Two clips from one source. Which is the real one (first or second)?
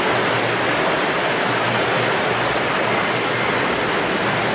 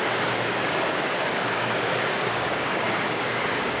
first